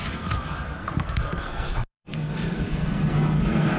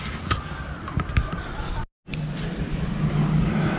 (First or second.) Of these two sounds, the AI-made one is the first